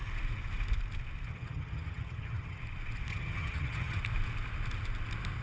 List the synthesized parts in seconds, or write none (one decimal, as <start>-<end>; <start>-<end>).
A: 1.3-2.6; 3.1-4.0